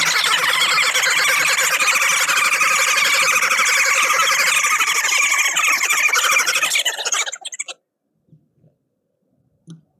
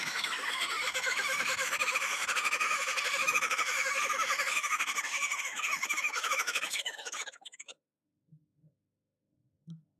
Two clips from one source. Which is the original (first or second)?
first